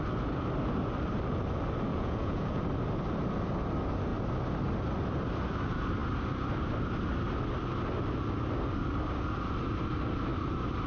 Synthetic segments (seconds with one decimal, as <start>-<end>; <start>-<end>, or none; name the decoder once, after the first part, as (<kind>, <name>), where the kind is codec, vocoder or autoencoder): 1.9-2.6 (vocoder, Vocos)